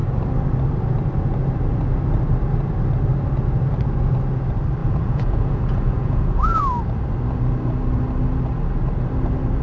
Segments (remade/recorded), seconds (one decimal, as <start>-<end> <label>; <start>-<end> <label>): 0.0-4.8 recorded; 4.8-6.6 remade; 6.6-9.6 recorded